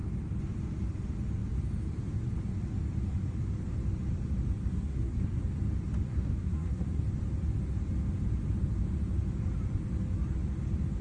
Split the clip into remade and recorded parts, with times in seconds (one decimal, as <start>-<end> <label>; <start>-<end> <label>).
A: 0.0-4.7 recorded; 4.7-5.4 remade; 5.4-6.1 recorded; 6.1-7.0 remade; 7.0-11.0 recorded